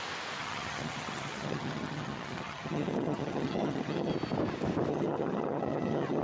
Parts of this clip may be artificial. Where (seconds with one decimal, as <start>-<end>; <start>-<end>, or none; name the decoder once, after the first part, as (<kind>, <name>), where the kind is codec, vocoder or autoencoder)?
0.4-4.1 (vocoder, HiFi-GAN); 4.9-6.2